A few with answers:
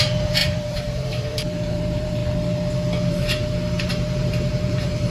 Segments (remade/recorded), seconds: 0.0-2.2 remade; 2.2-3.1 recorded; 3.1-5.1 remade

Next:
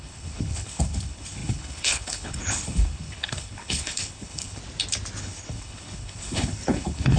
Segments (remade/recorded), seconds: 0.0-4.6 remade; 4.6-5.2 recorded; 5.2-7.2 remade